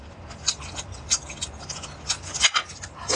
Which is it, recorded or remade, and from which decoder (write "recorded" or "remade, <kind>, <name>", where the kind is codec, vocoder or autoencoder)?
recorded